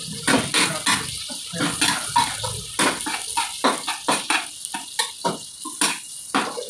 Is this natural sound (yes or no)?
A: yes